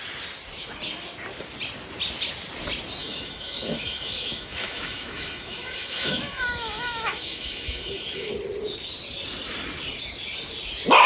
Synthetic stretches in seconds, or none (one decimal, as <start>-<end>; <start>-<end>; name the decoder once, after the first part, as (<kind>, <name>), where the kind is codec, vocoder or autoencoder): 3.0-8.3 (autoencoder, DAC-VAE)